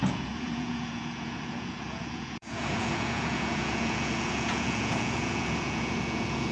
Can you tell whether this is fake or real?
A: fake